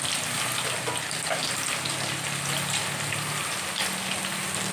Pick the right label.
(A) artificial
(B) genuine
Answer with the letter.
B